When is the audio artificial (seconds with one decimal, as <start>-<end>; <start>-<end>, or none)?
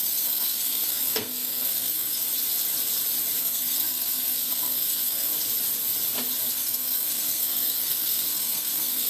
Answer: 0.0-2.2; 3.4-5.3; 6.5-9.1